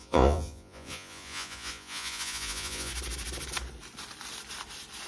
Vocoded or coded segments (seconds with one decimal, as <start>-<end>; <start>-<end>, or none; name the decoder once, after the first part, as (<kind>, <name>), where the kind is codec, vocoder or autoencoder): 0.0-2.9 (vocoder, Vocos)